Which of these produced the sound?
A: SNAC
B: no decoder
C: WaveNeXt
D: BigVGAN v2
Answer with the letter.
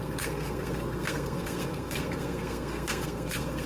A